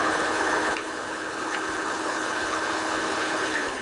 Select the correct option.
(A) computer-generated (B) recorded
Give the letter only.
A